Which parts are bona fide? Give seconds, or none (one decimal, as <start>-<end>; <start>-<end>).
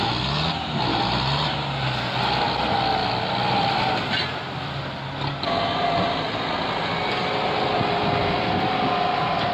0.0-3.0; 4.8-7.2; 8.1-9.5